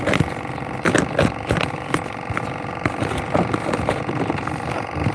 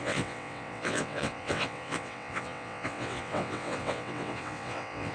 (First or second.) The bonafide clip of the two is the first